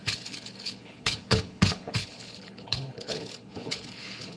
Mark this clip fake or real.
fake